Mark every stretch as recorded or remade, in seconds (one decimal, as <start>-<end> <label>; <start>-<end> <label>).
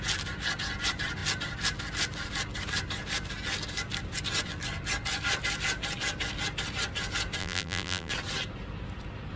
0.0-7.4 recorded; 7.4-8.1 remade; 8.1-9.4 recorded